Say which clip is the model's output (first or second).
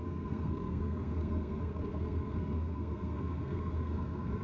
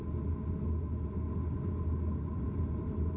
first